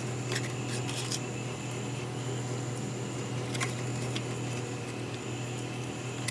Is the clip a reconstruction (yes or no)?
no